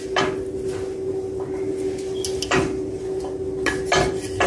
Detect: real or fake real